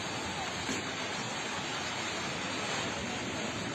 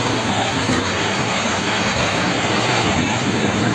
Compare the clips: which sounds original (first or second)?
first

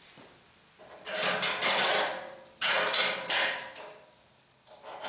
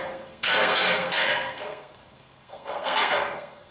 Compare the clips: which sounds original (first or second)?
first